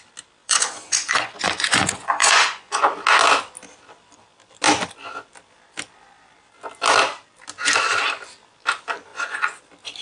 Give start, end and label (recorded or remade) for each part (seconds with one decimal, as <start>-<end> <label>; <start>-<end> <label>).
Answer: 0.0-0.4 recorded; 0.4-2.9 remade; 2.9-9.1 recorded; 9.1-9.6 remade; 9.6-10.0 recorded